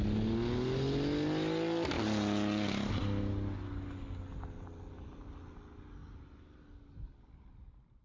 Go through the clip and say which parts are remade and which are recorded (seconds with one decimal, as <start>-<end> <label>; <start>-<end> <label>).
0.0-8.0 recorded